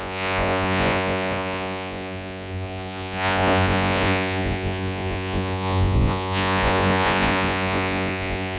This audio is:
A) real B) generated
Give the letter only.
B